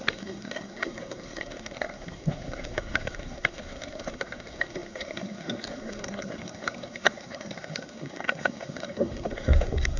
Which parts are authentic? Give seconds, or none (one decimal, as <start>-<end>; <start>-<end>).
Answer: none